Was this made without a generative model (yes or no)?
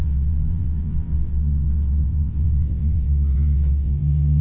no